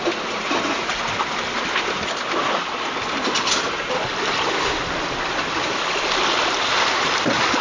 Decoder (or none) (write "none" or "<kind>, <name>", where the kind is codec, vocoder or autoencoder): none